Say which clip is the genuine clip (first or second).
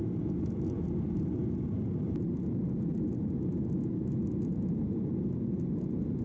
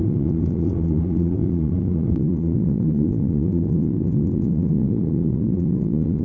first